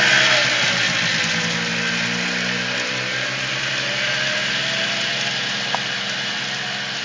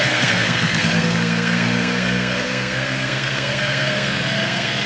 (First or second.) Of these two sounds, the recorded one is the first